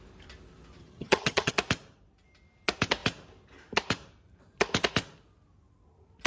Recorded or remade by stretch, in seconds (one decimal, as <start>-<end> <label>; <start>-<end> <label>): 0.0-0.8 recorded; 0.8-1.5 remade; 1.5-6.3 recorded